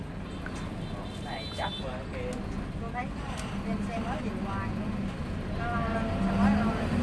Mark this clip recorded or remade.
recorded